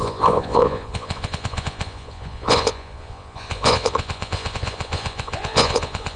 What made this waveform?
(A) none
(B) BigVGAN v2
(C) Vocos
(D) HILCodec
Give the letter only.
C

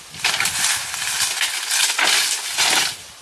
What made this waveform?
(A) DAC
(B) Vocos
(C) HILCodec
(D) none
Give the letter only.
D